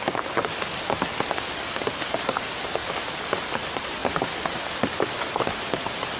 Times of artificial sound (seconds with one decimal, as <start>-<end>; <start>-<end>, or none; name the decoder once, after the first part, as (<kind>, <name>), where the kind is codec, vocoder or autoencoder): none